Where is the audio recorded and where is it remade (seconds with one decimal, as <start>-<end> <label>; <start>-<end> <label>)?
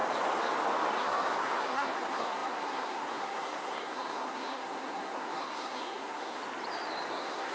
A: 0.0-1.0 recorded; 1.0-6.4 remade; 6.4-7.1 recorded; 7.1-7.5 remade